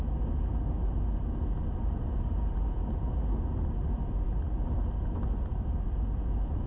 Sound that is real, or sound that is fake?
real